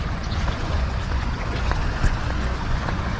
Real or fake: fake